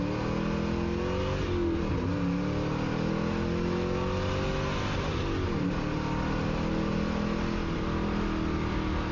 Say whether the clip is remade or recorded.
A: recorded